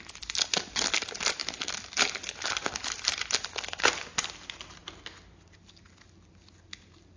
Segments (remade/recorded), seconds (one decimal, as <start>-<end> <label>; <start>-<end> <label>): 0.0-7.2 recorded